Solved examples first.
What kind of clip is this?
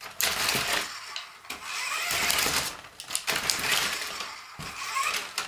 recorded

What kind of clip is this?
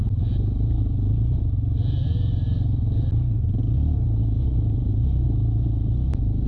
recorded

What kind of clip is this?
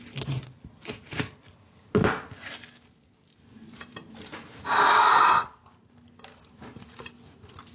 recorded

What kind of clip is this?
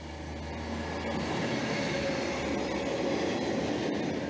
recorded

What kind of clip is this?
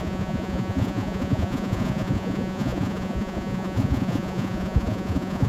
remade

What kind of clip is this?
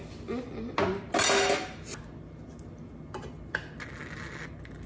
recorded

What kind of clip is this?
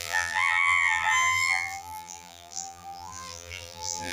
remade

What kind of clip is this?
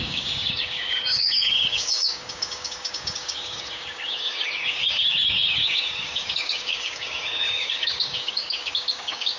remade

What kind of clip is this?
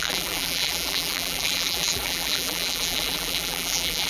remade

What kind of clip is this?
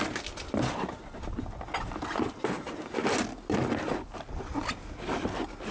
recorded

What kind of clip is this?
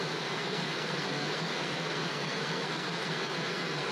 remade